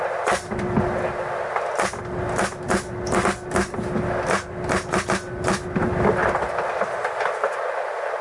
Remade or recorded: recorded